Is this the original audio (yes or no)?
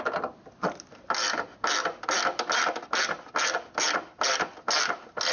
yes